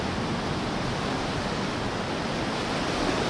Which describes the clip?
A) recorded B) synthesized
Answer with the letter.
A